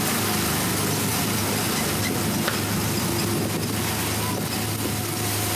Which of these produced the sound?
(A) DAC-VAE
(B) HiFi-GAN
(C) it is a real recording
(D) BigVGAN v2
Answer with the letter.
C